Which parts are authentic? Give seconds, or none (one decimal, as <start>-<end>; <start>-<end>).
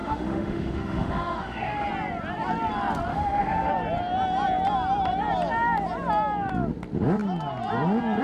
1.9-3.1; 3.7-8.2